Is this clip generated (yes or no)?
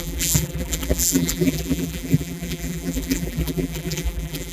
yes